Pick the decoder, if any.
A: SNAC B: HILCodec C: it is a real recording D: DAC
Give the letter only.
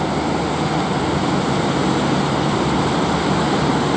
C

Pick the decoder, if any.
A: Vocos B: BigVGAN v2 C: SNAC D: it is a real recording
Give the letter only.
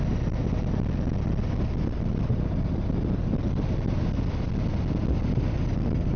D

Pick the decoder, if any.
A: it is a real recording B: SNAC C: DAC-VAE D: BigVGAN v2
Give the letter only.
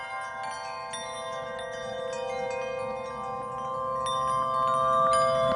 A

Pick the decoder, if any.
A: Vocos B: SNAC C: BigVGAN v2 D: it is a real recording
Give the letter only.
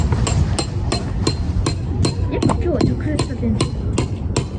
D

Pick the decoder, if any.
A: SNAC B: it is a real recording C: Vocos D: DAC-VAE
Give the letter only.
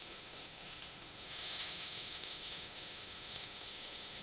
D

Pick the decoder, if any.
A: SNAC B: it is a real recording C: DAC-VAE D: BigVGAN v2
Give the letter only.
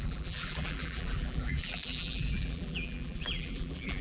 D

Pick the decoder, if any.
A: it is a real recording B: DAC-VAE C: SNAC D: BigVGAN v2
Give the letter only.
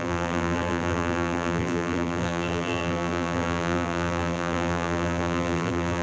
D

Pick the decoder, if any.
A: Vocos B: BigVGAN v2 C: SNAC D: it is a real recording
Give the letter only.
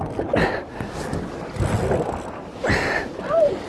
D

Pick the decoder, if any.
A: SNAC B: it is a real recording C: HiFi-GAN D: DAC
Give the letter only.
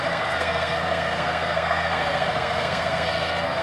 A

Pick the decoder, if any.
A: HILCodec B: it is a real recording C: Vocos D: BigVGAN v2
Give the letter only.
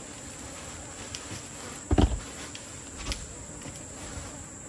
B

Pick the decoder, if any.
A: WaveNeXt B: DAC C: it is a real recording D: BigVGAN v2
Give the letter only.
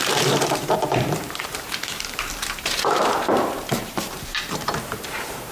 D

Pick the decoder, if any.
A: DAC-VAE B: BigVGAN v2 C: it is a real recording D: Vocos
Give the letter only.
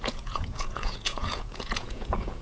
D